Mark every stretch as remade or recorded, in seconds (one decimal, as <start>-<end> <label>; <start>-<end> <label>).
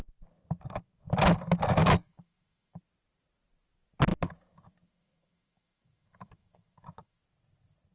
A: 0.0-1.8 recorded; 1.8-2.8 remade; 2.8-4.1 recorded; 4.1-7.2 remade; 7.2-7.9 recorded